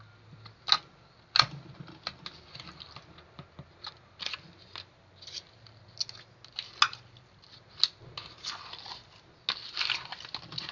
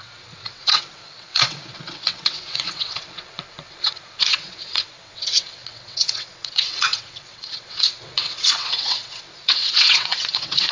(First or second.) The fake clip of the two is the second